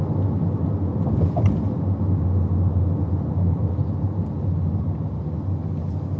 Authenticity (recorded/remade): recorded